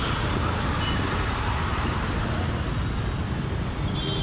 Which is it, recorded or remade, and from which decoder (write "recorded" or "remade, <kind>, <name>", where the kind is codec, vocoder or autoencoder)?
recorded